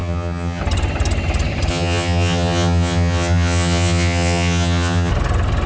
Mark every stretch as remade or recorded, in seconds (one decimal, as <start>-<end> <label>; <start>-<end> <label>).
0.0-0.6 remade; 0.6-1.7 recorded; 1.7-5.1 remade; 5.1-5.7 recorded